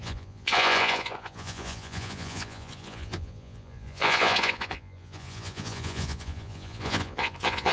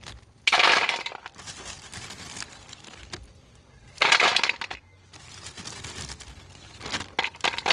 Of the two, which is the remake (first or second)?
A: first